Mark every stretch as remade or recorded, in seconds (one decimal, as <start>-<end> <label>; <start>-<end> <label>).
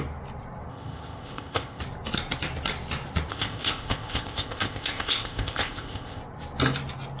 0.0-0.7 recorded; 0.7-1.8 remade; 1.8-3.3 recorded; 3.3-6.2 remade; 6.2-7.2 recorded